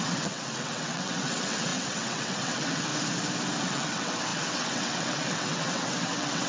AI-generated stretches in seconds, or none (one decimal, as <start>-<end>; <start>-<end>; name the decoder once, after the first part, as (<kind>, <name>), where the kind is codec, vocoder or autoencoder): 0.0-2.9 (vocoder, WaveNeXt); 3.6-6.5